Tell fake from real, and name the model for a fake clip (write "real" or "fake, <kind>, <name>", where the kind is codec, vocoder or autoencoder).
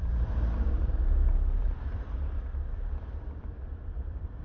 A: fake, vocoder, BigVGAN v2